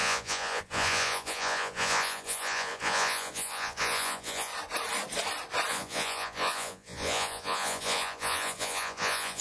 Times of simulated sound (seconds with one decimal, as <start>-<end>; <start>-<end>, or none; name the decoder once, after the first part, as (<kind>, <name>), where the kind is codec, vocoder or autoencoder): 0.0-4.5 (vocoder, Vocos); 5.7-9.4